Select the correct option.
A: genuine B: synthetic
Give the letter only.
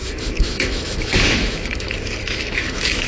B